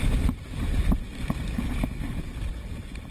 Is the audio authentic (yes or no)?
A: no